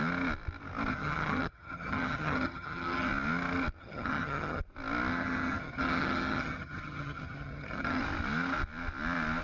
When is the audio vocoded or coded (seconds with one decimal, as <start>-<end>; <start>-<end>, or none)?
0.9-3.1; 3.8-4.6; 5.1-8.0